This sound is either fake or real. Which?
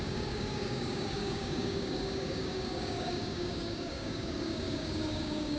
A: fake